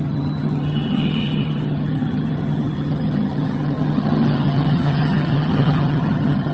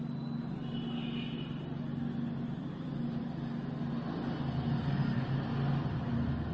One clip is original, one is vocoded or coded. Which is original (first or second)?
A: second